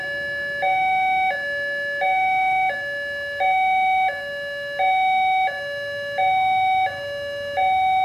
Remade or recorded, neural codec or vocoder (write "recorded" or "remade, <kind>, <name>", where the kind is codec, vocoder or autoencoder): recorded